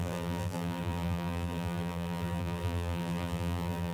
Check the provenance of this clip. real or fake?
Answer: fake